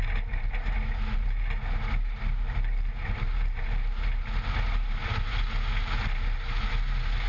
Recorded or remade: recorded